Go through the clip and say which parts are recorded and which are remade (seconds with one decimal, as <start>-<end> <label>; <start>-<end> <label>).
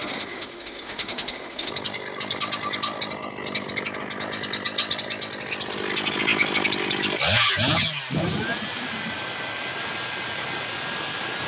0.0-1.7 remade; 1.7-11.5 recorded